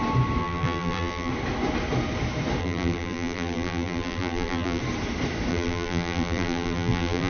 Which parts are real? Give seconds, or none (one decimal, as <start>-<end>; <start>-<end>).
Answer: 0.0-0.4; 1.3-2.6; 4.8-5.5